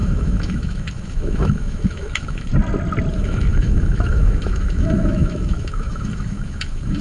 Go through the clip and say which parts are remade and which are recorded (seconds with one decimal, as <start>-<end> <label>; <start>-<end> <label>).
0.0-2.5 remade; 2.5-3.1 recorded; 3.1-7.0 remade